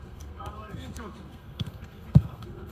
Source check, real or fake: fake